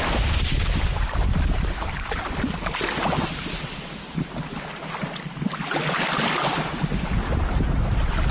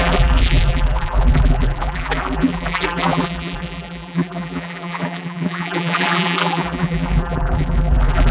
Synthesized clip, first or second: second